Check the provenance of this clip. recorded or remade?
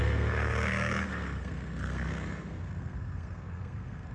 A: remade